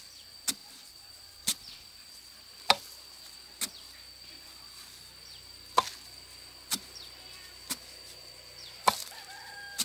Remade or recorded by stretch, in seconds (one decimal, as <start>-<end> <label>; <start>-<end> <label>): 0.0-9.8 recorded